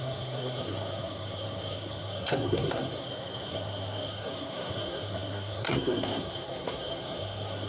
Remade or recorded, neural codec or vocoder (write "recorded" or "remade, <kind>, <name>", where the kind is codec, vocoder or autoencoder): remade, codec, SNAC